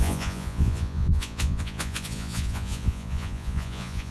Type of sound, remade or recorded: remade